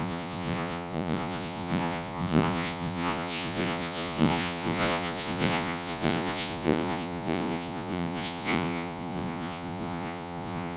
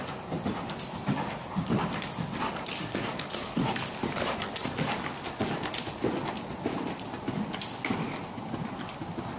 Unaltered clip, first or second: second